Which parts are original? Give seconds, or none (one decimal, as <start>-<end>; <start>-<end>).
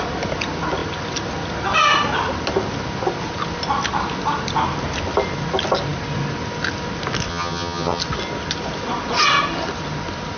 0.0-7.3; 8.0-10.4